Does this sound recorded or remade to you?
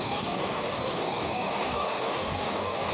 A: remade